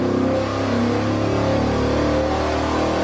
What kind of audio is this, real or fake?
real